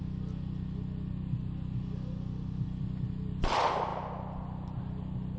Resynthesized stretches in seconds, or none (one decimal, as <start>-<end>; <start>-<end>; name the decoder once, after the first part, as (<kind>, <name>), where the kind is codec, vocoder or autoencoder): none